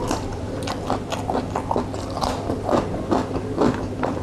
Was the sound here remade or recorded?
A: recorded